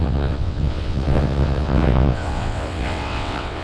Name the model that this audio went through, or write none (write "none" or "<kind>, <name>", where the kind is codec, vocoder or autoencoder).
vocoder, WaveNeXt